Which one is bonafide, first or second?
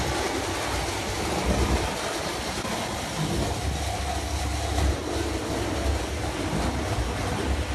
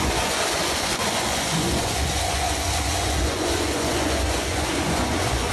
first